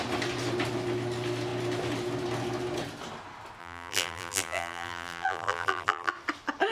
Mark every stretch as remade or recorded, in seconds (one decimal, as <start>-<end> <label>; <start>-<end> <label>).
0.0-3.6 recorded; 3.6-6.1 remade; 6.1-6.7 recorded